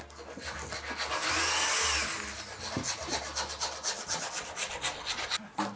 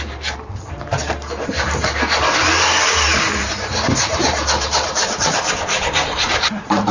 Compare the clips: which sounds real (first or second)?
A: first